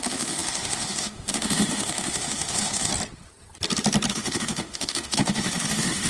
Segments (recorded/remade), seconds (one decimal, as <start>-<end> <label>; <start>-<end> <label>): 0.0-2.9 remade; 2.9-4.1 recorded; 4.1-6.1 remade